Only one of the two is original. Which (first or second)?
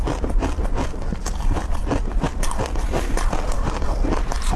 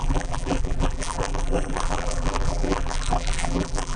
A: first